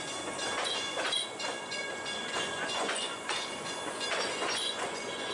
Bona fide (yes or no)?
no